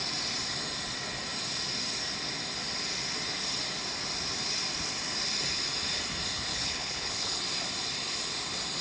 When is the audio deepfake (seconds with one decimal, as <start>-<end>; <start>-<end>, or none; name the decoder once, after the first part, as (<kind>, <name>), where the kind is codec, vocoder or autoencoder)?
6.5-7.4 (codec, HILCodec)